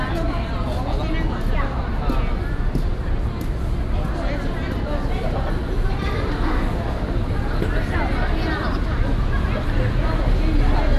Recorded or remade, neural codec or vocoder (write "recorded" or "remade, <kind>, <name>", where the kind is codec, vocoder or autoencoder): recorded